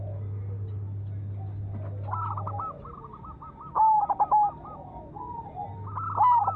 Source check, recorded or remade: recorded